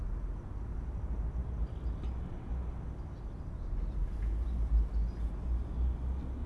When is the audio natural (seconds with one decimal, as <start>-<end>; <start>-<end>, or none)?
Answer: 0.0-6.5

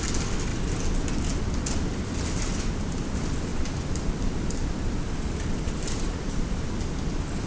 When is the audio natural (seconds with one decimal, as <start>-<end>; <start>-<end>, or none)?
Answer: 0.0-3.5; 6.6-7.5

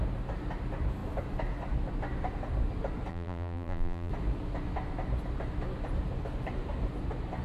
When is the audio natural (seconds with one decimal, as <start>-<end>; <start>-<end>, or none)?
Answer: 0.0-3.1; 4.1-7.4

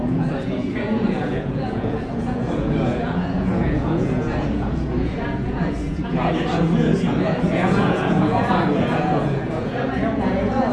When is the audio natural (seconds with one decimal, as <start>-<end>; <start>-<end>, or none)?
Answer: 6.9-7.4

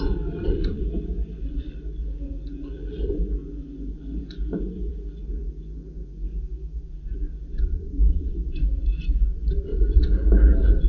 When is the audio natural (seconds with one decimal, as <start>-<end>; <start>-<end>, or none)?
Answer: 4.9-5.6